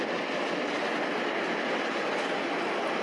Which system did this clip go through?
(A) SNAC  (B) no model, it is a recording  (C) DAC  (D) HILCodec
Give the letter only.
B